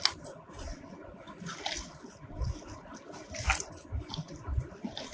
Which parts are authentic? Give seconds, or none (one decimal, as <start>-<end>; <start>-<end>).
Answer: 0.0-5.1